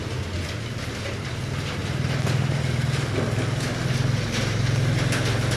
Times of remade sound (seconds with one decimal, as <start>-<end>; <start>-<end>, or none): none